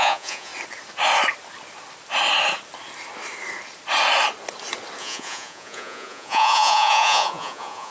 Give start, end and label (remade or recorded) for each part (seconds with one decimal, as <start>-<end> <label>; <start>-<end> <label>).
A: 0.0-0.5 remade; 0.5-5.0 recorded; 5.0-7.9 remade